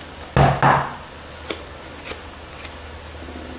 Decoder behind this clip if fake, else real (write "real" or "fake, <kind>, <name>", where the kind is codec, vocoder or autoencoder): real